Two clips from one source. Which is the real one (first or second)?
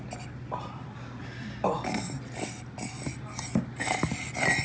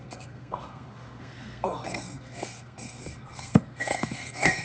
first